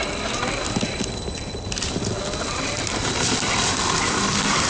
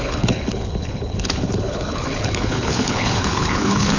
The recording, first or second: first